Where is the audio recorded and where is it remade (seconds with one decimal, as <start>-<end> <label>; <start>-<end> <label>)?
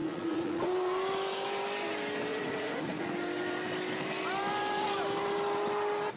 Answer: 0.0-0.6 remade; 0.6-2.3 recorded; 2.3-3.1 remade; 3.1-6.2 recorded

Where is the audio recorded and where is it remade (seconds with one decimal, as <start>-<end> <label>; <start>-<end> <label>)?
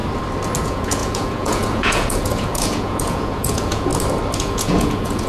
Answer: 0.0-0.6 recorded; 0.6-3.9 remade; 3.9-4.4 recorded; 4.4-5.3 remade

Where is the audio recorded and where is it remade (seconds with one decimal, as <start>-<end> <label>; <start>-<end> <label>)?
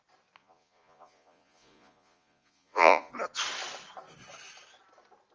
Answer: 0.0-0.4 recorded; 0.4-3.1 remade; 3.1-5.3 recorded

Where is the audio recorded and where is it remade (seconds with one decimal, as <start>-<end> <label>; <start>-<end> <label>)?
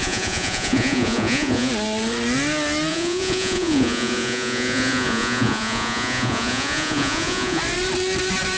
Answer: 0.0-1.7 remade; 1.7-2.9 recorded; 2.9-7.6 remade; 7.6-8.6 recorded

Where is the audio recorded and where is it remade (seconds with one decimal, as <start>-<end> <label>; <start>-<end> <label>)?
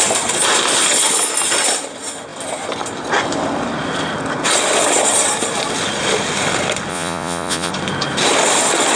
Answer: 0.0-6.9 recorded; 6.9-7.7 remade; 7.7-9.0 recorded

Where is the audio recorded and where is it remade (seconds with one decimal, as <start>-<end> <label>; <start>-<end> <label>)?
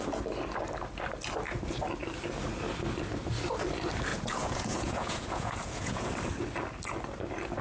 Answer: 0.0-4.1 recorded; 4.1-6.1 remade; 6.1-7.6 recorded